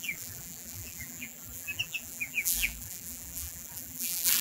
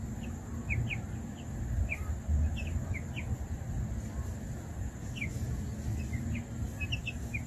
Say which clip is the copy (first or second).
first